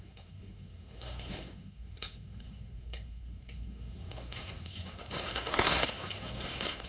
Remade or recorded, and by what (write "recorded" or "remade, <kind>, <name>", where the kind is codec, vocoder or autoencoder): remade, codec, SNAC